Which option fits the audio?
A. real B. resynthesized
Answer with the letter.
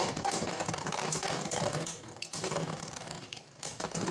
B